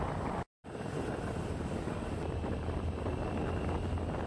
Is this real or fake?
real